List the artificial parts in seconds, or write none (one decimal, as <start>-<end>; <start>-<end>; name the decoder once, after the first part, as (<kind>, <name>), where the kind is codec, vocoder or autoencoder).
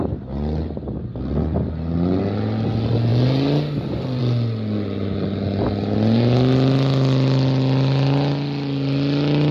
none